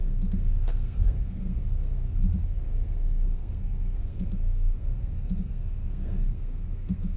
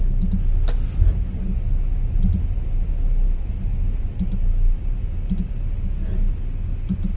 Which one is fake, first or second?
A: first